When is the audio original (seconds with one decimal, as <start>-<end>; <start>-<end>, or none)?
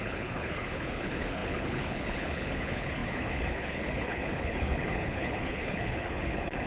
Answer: none